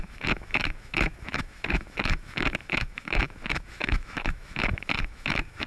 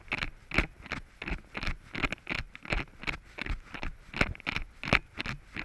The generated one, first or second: first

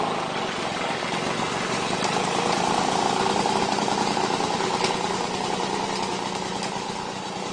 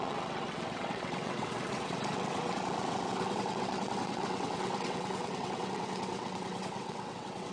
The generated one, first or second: second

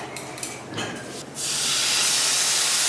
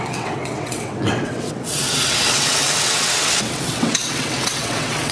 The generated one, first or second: second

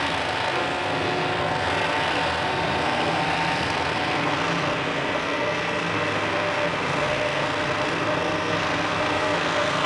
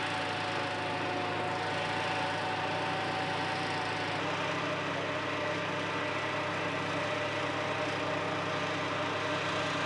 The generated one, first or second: first